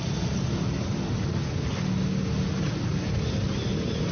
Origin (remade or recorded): recorded